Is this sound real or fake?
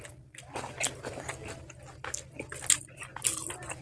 real